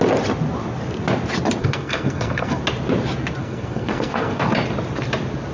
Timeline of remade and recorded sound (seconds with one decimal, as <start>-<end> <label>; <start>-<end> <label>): 0.0-1.6 recorded; 1.6-2.6 remade; 2.6-3.4 recorded; 3.4-4.5 remade; 4.5-5.5 recorded